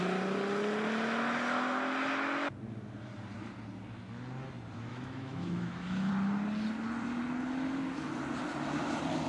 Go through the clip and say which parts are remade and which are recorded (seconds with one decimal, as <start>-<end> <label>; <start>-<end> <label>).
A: 0.0-4.9 recorded; 4.9-6.1 remade; 6.1-9.3 recorded